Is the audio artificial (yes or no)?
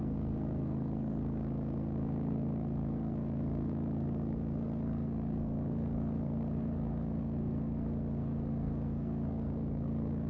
yes